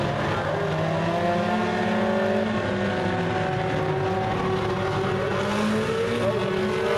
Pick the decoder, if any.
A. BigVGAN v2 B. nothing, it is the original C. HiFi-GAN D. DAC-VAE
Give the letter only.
B